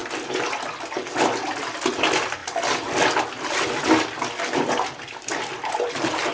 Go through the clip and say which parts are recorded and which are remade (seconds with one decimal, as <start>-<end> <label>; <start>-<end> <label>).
0.0-6.3 recorded